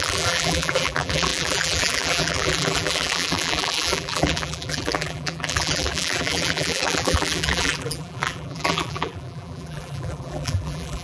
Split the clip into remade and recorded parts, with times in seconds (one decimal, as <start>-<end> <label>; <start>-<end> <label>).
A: 0.0-11.0 remade